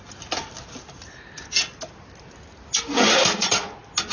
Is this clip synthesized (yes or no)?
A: no